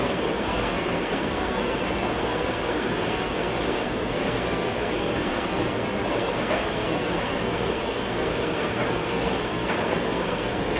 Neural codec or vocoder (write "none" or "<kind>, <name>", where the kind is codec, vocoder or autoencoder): codec, SNAC